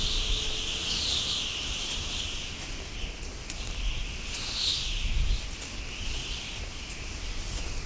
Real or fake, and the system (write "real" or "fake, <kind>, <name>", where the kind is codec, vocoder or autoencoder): real